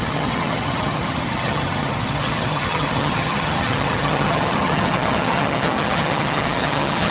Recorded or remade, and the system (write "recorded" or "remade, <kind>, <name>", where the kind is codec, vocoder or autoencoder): remade, vocoder, HiFi-GAN